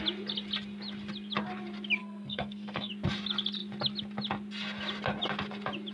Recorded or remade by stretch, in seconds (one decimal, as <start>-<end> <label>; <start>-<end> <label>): 0.0-2.0 recorded; 2.0-2.9 remade; 2.9-5.9 recorded